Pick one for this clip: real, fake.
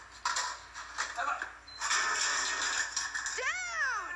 real